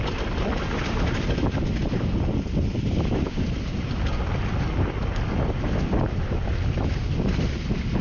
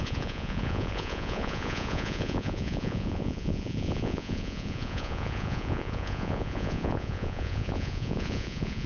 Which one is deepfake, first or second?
second